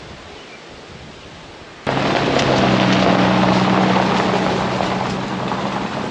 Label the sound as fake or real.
real